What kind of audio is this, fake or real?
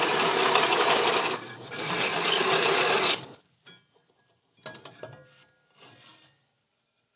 real